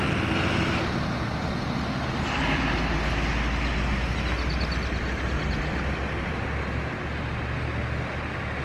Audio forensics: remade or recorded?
recorded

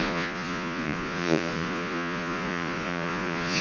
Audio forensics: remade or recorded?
remade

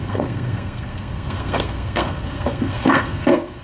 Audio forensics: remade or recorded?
remade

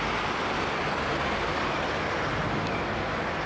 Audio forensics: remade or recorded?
recorded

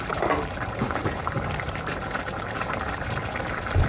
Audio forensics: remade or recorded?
remade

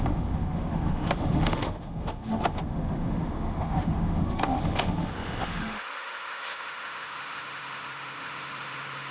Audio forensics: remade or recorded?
remade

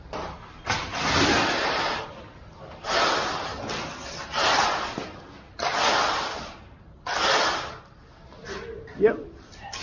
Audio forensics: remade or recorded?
recorded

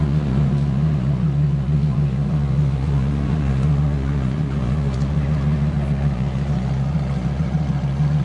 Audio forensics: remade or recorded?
remade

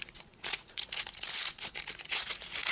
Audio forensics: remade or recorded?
remade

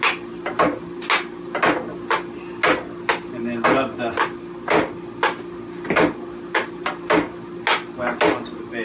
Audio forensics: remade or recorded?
recorded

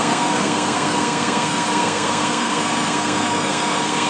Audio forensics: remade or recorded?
remade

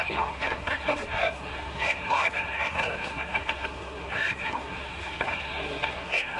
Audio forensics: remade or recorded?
remade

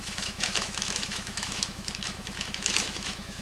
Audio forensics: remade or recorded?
remade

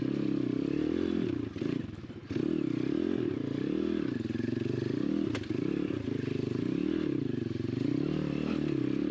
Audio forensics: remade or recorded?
recorded